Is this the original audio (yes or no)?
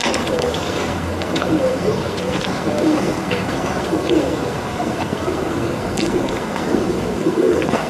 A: no